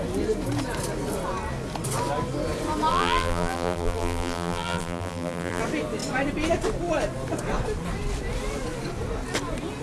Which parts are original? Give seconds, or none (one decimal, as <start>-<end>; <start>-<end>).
0.0-2.9; 5.6-9.8